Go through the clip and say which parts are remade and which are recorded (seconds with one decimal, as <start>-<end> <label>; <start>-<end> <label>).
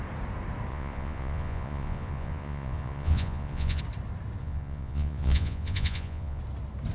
0.0-0.7 recorded; 0.7-3.8 remade; 3.8-4.4 recorded; 4.4-6.4 remade; 6.4-6.9 recorded